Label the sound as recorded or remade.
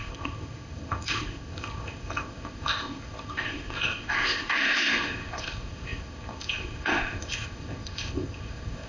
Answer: remade